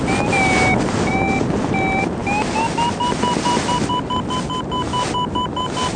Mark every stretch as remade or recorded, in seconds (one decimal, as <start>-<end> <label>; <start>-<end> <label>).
0.0-6.0 recorded